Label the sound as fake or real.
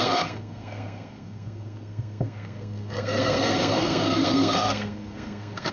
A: fake